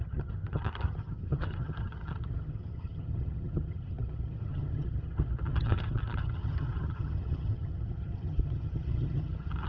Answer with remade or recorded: remade